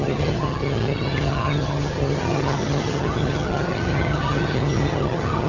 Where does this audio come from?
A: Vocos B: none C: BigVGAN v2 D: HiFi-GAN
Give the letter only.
D